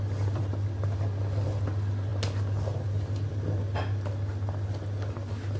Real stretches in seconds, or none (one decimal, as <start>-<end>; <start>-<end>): 0.0-5.6